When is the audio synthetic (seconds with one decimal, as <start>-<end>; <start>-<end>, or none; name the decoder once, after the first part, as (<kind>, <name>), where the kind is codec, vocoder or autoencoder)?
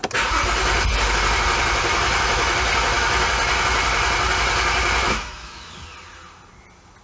5.0-5.7 (autoencoder, DAC-VAE)